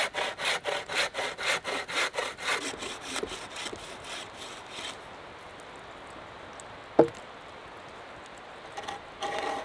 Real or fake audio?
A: real